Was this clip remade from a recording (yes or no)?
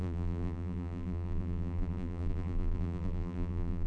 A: yes